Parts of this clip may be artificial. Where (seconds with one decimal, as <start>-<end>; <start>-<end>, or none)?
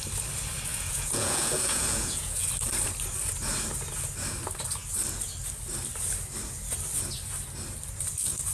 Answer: 0.7-2.5